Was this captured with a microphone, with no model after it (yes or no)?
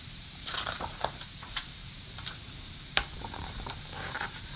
no